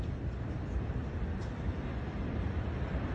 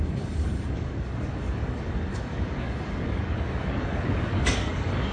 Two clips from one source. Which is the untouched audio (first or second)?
first